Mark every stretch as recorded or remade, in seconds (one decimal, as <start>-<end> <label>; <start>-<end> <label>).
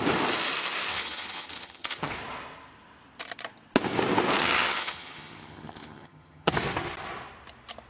0.0-0.9 recorded; 0.9-2.1 remade; 2.1-4.4 recorded; 4.4-6.5 remade; 6.5-7.9 recorded